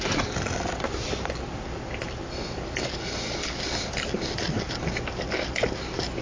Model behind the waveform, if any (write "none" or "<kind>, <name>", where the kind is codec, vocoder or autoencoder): none